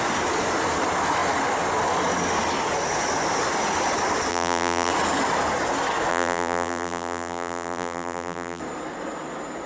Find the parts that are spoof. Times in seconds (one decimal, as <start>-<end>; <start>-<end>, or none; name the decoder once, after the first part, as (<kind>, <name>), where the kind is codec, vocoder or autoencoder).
4.3-4.9 (vocoder, BigVGAN v2); 6.1-8.6